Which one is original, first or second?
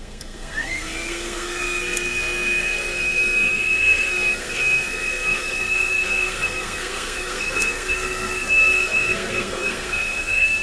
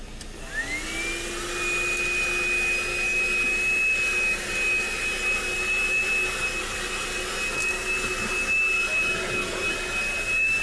second